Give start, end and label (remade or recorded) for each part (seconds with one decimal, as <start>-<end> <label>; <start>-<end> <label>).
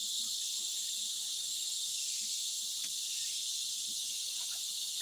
0.0-5.0 recorded